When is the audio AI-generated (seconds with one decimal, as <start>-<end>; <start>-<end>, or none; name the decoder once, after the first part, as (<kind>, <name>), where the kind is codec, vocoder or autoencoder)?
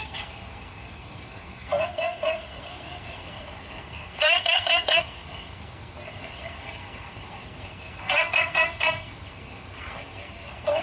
0.0-10.8 (codec, SNAC)